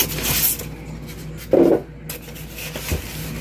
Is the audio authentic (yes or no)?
yes